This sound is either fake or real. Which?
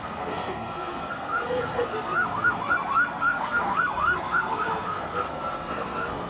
fake